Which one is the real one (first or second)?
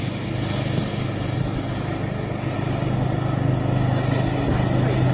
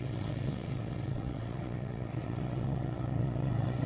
first